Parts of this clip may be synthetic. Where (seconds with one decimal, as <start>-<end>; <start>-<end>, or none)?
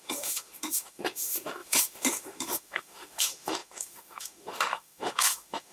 0.0-5.7